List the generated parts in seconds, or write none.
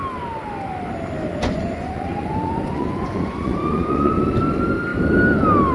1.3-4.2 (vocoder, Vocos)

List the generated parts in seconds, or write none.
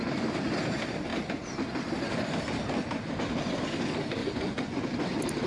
4.2-4.8 (vocoder, Vocos)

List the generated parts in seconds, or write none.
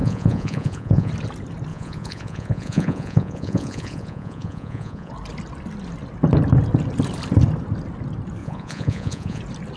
0.0-1.1 (vocoder, Vocos); 1.7-5.1; 8.4-9.4